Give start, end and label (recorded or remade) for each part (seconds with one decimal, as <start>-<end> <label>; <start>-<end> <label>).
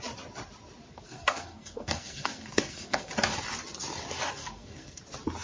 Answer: 0.0-0.9 recorded; 0.9-3.1 remade; 3.1-4.4 recorded; 4.4-5.0 remade; 5.0-5.4 recorded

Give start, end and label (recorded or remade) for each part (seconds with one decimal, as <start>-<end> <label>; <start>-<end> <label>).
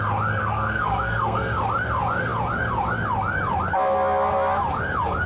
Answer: 0.0-0.4 recorded; 0.4-1.6 remade; 1.6-5.3 recorded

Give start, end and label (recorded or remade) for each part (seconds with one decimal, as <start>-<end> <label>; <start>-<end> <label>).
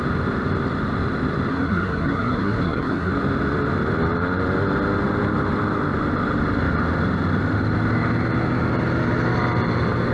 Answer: 0.0-1.5 recorded; 1.5-3.1 remade; 3.1-10.1 recorded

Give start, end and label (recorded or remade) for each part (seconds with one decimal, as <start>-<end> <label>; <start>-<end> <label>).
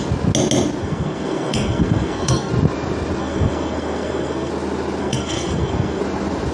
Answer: 0.0-0.8 recorded; 0.8-2.5 remade; 2.5-3.2 recorded; 3.2-4.5 remade; 4.5-5.0 recorded; 5.0-6.0 remade; 6.0-6.5 recorded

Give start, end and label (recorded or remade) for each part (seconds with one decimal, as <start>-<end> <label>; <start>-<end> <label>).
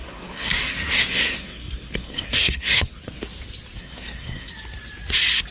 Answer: 0.0-3.2 remade; 3.2-3.8 recorded; 3.8-4.5 remade; 4.5-5.5 recorded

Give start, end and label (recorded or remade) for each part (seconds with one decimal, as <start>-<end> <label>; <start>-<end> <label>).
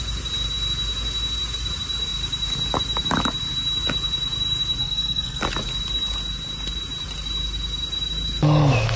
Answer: 0.0-4.8 recorded; 4.8-5.4 remade; 5.4-9.0 recorded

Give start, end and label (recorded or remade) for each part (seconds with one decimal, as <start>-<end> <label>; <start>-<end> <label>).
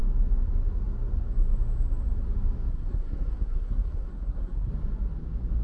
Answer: 0.0-2.7 recorded; 2.7-4.7 remade; 4.7-5.6 recorded